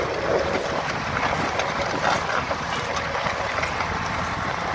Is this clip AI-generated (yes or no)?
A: no